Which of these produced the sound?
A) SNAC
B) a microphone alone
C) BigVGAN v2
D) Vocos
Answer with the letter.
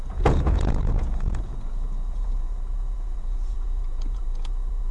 D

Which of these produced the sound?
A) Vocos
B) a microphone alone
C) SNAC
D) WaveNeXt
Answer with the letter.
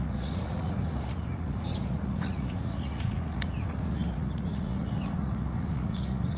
A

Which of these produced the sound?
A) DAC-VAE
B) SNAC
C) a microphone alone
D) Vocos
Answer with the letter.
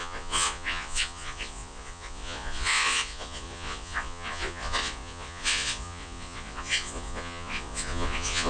D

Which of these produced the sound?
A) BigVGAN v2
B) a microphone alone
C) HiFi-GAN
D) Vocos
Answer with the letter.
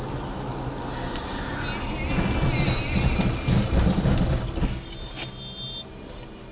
B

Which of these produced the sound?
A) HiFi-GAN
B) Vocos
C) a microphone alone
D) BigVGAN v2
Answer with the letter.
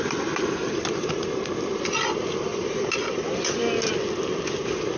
C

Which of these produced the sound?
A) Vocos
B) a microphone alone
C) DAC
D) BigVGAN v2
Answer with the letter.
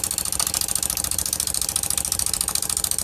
B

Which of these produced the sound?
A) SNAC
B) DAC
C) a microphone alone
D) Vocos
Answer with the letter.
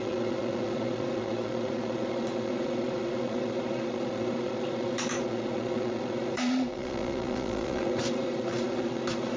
D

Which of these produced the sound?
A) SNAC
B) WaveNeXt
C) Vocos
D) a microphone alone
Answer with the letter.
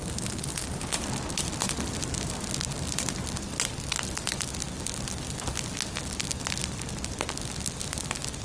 D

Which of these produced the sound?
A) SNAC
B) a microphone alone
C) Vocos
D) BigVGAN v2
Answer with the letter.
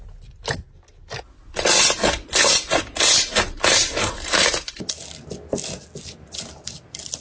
B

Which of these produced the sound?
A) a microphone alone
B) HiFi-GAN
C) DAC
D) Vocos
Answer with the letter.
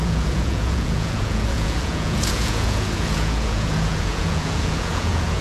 D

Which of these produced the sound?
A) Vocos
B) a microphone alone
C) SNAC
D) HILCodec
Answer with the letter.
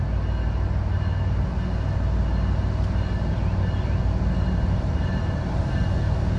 B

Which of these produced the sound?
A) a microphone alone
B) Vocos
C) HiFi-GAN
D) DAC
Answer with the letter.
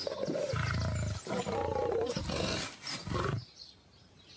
A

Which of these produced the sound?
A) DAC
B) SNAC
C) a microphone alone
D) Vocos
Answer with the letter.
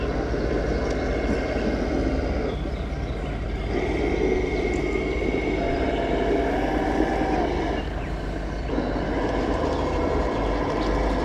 C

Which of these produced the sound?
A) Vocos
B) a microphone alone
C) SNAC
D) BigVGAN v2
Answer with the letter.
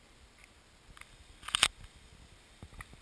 B